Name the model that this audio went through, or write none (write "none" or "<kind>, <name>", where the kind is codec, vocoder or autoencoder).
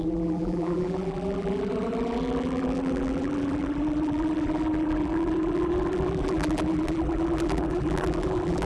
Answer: vocoder, BigVGAN v2